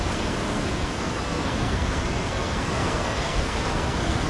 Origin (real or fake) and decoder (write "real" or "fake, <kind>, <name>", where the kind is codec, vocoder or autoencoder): fake, codec, SNAC